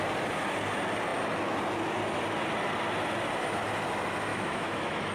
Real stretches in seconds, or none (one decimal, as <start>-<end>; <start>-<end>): 0.0-4.3